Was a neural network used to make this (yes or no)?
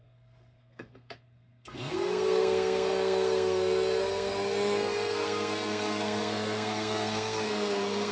yes